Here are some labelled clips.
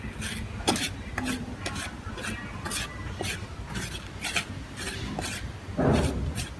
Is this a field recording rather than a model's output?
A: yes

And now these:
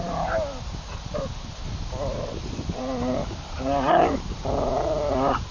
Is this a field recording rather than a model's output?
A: yes